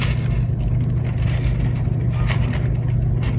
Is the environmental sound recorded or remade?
recorded